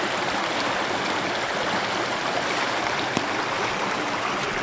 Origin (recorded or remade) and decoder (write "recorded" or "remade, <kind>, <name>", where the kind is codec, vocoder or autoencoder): recorded